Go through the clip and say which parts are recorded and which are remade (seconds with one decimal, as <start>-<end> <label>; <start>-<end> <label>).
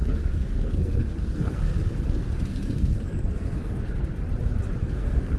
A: 0.0-4.1 remade; 4.1-4.8 recorded; 4.8-5.4 remade